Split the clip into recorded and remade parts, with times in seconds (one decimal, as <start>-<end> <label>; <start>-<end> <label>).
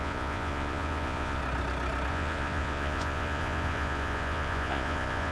0.0-1.4 remade; 1.4-2.1 recorded; 2.1-5.3 remade